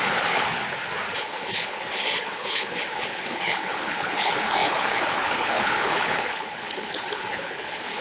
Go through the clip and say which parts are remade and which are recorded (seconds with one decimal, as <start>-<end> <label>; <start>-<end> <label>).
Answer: 0.0-0.6 remade; 0.6-1.2 recorded; 1.2-8.0 remade